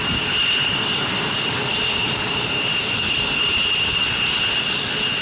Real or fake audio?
real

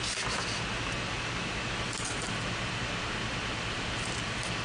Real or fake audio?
real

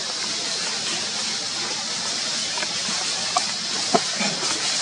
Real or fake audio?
real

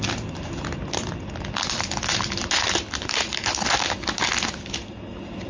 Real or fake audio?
real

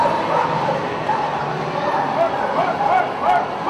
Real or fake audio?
real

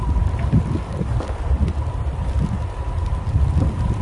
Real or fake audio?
real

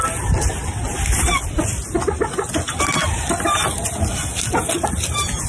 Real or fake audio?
real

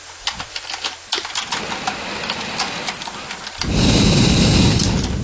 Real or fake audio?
real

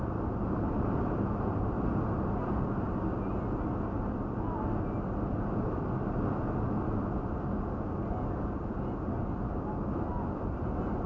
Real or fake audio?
real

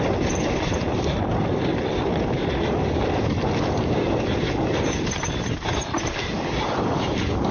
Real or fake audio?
real